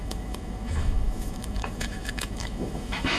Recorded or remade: remade